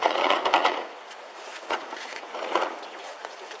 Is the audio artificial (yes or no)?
yes